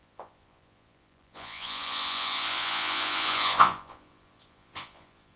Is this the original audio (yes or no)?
no